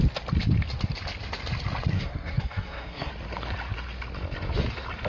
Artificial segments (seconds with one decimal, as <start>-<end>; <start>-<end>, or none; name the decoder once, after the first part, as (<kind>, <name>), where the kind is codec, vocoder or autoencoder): 1.9-3.1 (codec, SNAC)